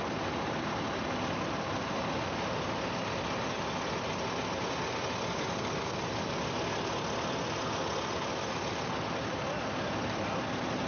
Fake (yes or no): no